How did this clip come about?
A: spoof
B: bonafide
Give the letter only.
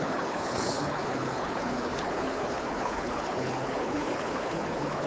A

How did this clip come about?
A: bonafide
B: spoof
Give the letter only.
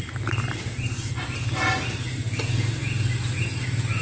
A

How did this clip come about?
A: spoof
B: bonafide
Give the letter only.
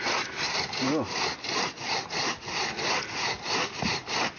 B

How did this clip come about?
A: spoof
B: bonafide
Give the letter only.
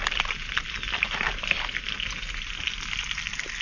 B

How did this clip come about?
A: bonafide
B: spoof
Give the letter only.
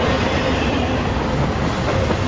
A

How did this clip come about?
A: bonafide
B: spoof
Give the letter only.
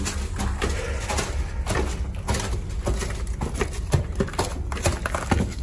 A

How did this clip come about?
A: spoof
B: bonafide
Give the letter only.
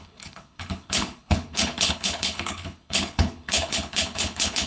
A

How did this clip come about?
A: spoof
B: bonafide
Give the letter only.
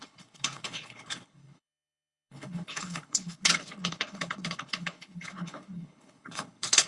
A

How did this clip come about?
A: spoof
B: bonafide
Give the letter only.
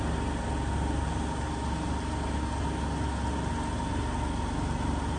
B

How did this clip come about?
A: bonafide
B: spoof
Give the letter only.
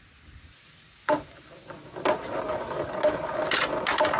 A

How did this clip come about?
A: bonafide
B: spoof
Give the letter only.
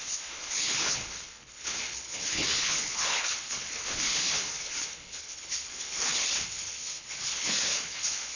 B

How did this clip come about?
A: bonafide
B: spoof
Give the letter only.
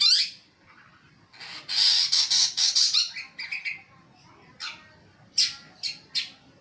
A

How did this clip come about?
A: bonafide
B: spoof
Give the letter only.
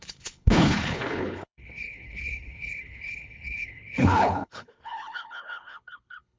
B